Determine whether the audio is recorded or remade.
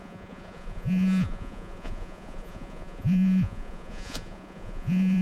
remade